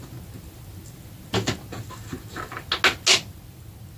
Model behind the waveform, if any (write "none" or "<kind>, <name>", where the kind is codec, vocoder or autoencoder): none